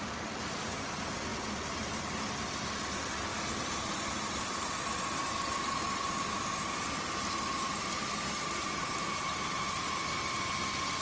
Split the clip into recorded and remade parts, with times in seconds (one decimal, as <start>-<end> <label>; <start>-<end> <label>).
0.0-3.3 recorded; 3.3-4.2 remade; 4.2-8.8 recorded; 8.8-10.6 remade; 10.6-11.0 recorded